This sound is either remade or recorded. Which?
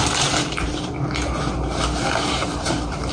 remade